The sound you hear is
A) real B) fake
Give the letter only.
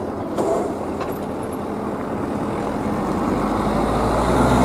A